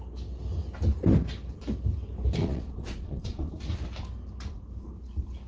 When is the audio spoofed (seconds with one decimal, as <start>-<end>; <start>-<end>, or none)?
2.4-3.5